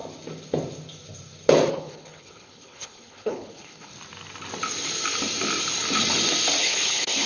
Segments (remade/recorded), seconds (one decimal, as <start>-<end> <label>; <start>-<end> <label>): 0.0-1.7 recorded; 1.7-3.9 remade; 3.9-6.6 recorded; 6.6-7.3 remade